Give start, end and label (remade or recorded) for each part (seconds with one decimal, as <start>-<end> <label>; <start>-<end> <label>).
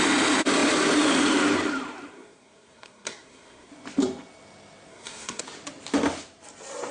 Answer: 0.0-2.1 recorded; 2.1-3.7 remade; 3.7-4.9 recorded; 4.9-5.4 remade; 5.4-6.9 recorded